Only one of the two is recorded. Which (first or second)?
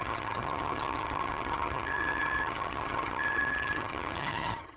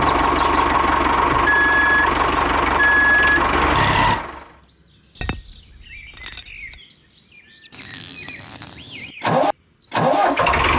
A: second